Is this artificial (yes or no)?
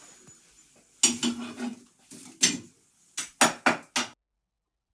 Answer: no